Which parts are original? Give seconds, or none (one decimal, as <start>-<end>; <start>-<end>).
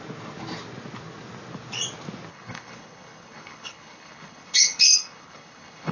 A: 0.0-2.3